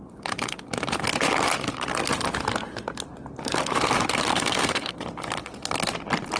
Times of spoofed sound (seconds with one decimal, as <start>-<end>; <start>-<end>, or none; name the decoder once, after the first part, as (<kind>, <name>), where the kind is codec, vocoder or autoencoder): 4.3-4.9 (codec, SNAC)